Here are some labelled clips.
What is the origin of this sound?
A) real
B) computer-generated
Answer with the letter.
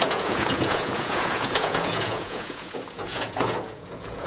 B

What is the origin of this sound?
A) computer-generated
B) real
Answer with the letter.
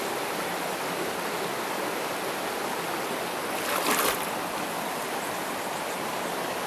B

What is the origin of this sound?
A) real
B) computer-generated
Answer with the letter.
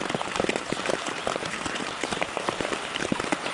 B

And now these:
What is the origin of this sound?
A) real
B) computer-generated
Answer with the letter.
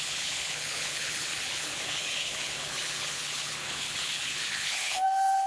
B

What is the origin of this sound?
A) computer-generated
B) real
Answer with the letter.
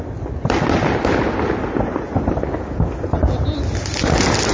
B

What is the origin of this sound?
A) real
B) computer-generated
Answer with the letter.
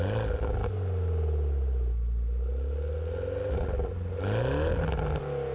A